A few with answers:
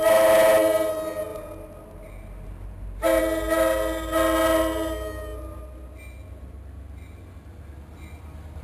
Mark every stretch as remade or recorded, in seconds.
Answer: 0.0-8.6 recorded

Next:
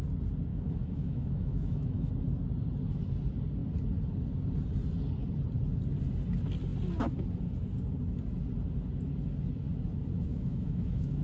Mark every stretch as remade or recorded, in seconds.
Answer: 0.0-0.5 recorded; 0.5-2.1 remade; 2.1-10.3 recorded; 10.3-11.2 remade

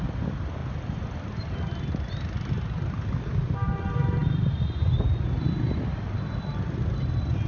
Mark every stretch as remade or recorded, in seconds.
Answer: 0.0-7.5 recorded

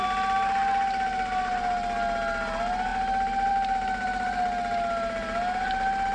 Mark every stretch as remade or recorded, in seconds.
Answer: 0.0-6.1 recorded

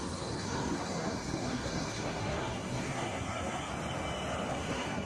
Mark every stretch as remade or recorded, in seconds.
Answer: 0.0-3.7 remade; 3.7-4.5 recorded; 4.5-5.1 remade

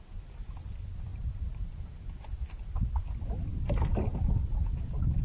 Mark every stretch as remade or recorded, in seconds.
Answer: 0.0-1.1 recorded; 1.1-1.9 remade; 1.9-5.2 recorded

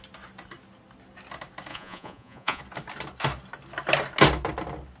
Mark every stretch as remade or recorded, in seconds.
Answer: 0.0-1.7 recorded; 1.7-2.6 remade; 2.6-5.0 recorded